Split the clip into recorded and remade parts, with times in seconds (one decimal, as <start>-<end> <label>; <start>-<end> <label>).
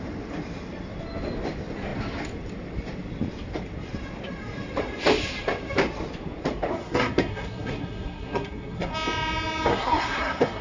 0.0-6.7 recorded; 6.7-8.9 remade; 8.9-9.7 recorded; 9.7-10.6 remade